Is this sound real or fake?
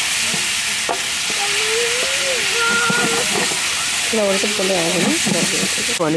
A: real